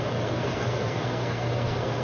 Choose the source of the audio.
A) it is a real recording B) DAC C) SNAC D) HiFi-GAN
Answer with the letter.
C